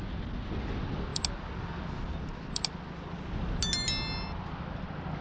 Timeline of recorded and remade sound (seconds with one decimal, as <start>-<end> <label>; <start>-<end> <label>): 0.0-5.2 recorded

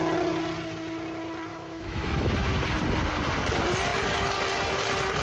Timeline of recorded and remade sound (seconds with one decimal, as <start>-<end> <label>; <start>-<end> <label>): 0.0-1.5 recorded; 1.5-2.3 remade; 2.3-5.2 recorded